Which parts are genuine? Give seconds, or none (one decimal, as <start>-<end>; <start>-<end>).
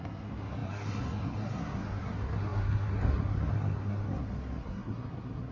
none